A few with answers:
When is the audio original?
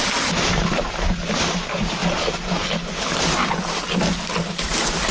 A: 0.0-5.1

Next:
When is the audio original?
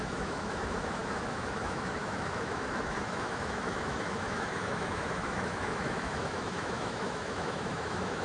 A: none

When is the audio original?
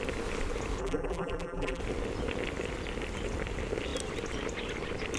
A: 0.0-0.8; 1.8-5.2